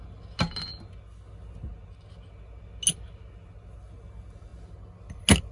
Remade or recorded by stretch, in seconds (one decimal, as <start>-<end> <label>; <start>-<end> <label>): 0.0-5.5 recorded